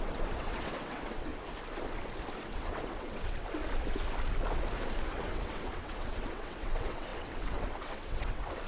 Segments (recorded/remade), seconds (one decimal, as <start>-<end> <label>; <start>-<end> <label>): 0.0-1.3 remade; 1.3-2.4 recorded; 2.4-3.6 remade; 3.6-5.1 recorded; 5.1-8.7 remade

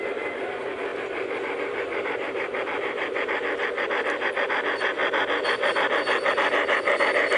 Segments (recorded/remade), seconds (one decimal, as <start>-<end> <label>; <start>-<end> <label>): 0.0-7.4 recorded

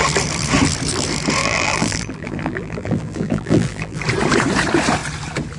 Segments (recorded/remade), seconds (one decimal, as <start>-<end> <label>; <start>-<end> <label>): 0.0-1.4 recorded; 1.4-4.0 remade; 4.0-5.6 recorded

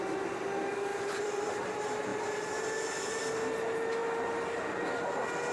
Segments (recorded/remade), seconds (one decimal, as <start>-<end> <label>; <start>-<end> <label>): 0.0-0.9 recorded; 0.9-1.6 remade; 1.6-2.1 recorded; 2.1-3.2 remade; 3.2-5.5 recorded